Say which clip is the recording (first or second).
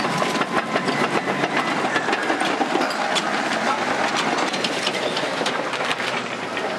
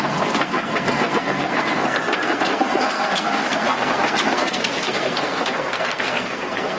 first